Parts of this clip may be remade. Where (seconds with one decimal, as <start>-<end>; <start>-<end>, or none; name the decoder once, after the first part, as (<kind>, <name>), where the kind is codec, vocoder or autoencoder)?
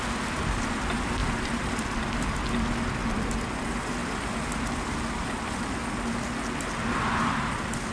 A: 1.2-2.2 (vocoder, BigVGAN v2); 4.0-5.6